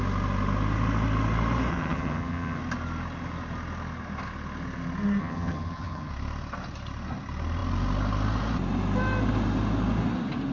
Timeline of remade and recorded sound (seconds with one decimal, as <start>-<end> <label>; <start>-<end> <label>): 0.0-1.7 recorded; 1.7-2.6 remade; 2.6-5.2 recorded; 5.2-6.1 remade; 6.1-10.5 recorded